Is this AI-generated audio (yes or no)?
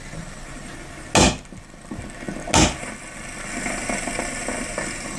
no